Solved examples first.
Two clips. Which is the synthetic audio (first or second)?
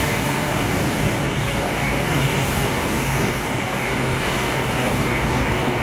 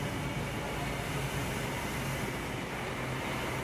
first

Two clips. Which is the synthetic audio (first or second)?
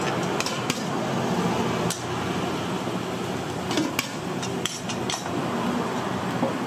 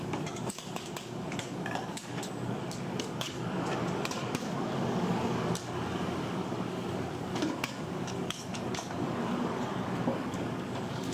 second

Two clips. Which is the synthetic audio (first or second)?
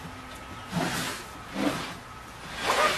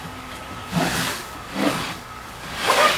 second